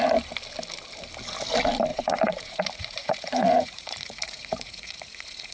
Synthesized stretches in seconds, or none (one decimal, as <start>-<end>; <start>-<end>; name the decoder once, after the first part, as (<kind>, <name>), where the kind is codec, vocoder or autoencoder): 1.9-5.5 (vocoder, Vocos)